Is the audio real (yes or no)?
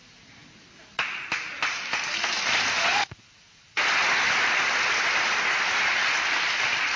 yes